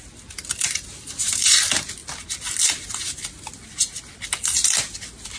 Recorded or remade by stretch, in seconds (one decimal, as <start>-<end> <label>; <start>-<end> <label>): 0.0-5.4 recorded